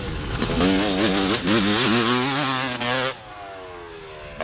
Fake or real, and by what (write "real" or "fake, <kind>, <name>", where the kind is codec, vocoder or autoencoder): real